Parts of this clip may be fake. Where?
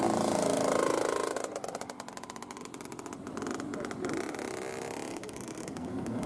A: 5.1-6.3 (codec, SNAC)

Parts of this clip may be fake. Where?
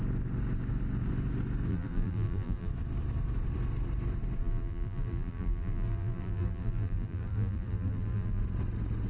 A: 1.7-2.7 (vocoder, BigVGAN v2); 4.4-8.4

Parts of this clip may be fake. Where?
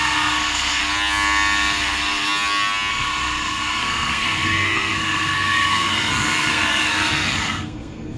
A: 0.0-0.8 (codec, SNAC); 2.9-8.2